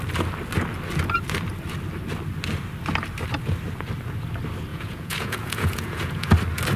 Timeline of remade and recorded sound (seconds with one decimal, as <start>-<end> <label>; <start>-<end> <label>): 0.0-4.7 recorded; 4.7-6.3 remade; 6.3-6.8 recorded